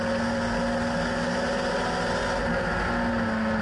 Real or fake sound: real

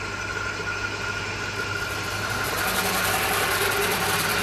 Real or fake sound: real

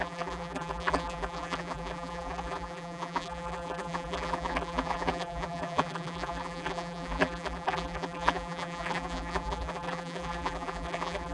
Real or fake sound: fake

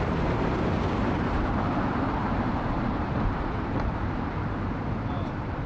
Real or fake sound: fake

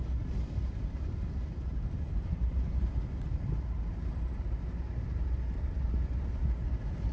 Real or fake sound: fake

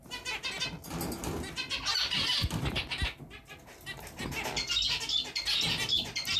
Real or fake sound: real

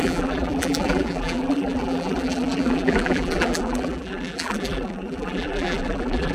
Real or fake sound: fake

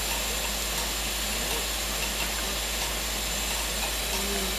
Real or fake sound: real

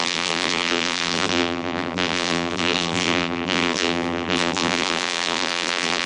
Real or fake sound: fake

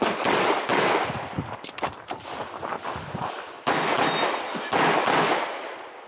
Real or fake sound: real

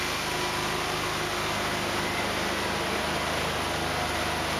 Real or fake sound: real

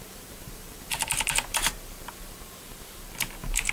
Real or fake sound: fake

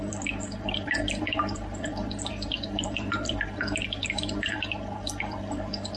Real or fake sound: fake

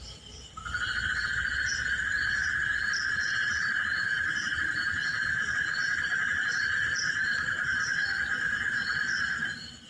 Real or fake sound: fake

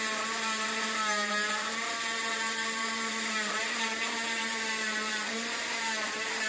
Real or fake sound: fake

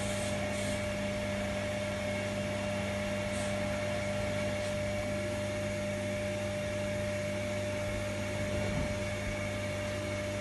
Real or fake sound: real